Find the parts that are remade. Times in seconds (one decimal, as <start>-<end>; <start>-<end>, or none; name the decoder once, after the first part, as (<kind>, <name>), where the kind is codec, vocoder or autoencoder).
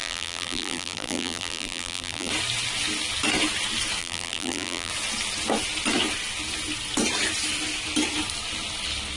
0.0-2.3 (vocoder, BigVGAN v2); 4.0-4.9